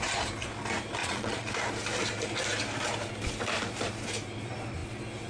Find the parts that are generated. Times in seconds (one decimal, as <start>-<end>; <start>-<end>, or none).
1.0-1.5